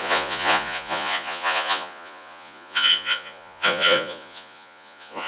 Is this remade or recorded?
remade